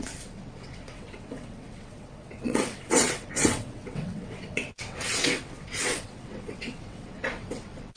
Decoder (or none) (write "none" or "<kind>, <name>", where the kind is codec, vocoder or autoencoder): vocoder, WaveNeXt